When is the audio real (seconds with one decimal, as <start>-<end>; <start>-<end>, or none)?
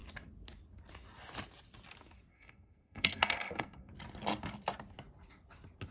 0.0-2.3; 3.9-5.9